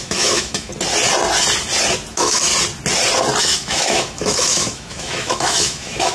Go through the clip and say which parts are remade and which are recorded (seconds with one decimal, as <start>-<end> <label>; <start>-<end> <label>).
0.0-0.7 remade; 0.7-2.1 recorded; 2.1-2.5 remade; 2.5-3.4 recorded; 3.4-6.1 remade